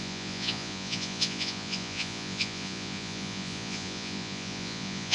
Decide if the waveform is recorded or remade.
remade